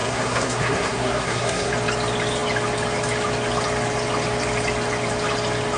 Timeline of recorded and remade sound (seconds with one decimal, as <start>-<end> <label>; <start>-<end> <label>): 0.0-1.7 remade; 1.7-5.8 recorded